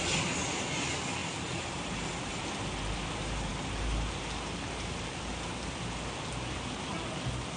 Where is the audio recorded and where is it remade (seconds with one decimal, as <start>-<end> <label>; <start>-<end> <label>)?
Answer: 0.0-7.6 recorded